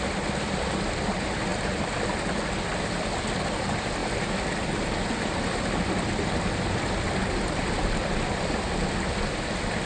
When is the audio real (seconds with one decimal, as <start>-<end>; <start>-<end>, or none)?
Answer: 0.0-9.9